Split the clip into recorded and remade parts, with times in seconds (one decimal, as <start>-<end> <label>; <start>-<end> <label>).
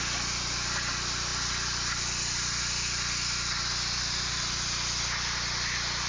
0.0-6.1 recorded